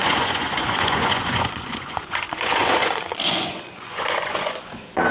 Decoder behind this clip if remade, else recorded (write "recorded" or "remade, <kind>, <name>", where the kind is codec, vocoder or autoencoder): remade, vocoder, Vocos